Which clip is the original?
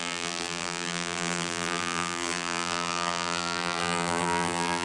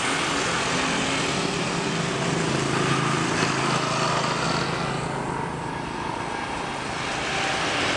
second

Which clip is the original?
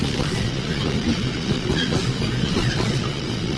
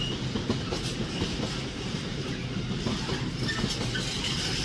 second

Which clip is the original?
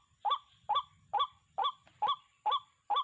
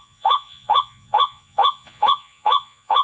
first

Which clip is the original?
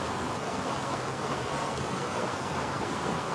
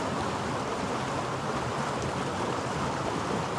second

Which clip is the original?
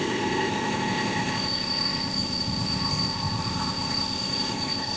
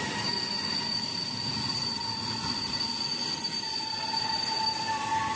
second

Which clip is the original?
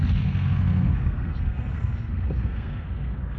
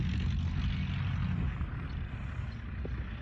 second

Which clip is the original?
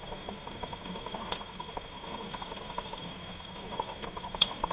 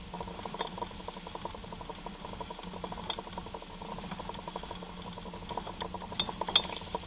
second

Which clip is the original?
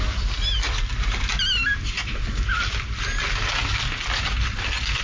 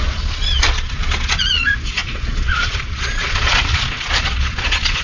first